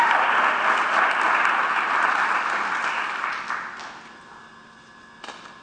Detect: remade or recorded recorded